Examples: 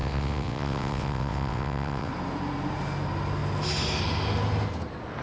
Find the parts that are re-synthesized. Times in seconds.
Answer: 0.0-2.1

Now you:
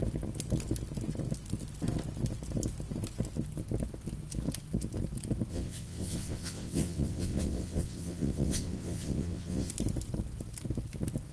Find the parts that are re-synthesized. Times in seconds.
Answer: 5.5-9.7